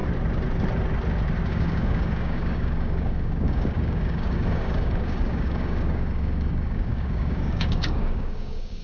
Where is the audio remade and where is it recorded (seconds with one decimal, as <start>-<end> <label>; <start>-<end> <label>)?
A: 0.0-1.5 recorded; 1.5-8.8 remade